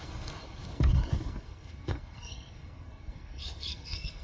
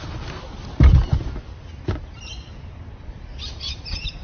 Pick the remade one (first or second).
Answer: first